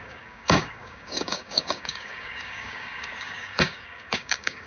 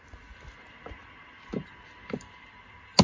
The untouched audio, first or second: second